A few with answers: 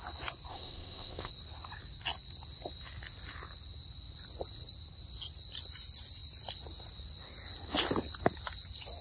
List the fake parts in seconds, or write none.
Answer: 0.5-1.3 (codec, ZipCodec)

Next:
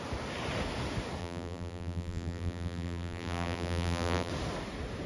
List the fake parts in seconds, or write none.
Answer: 1.2-4.3 (vocoder, BigVGAN v2)

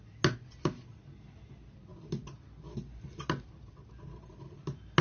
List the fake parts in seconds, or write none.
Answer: none

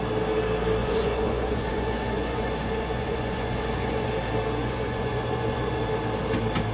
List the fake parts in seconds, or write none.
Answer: 0.8-4.1 (vocoder, Vocos); 4.6-5.8

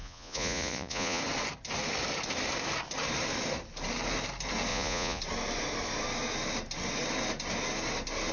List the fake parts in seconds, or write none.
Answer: 0.0-1.2 (vocoder, Vocos); 4.7-5.2

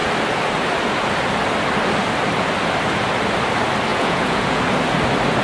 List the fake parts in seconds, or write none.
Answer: 3.9-4.6 (vocoder, Vocos)

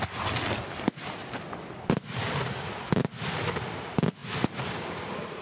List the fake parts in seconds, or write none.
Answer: none